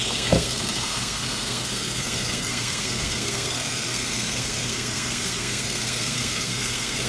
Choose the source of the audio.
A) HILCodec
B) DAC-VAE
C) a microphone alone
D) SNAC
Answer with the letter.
D